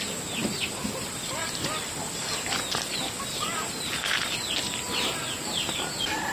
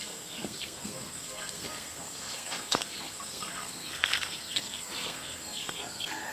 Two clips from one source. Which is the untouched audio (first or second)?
first